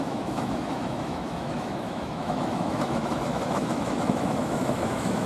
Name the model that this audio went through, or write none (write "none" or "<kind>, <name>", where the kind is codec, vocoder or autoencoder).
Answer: autoencoder, DAC-VAE